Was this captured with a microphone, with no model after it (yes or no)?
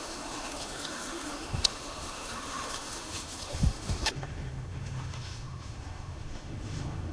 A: no